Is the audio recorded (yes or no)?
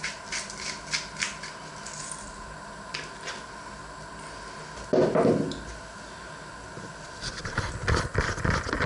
yes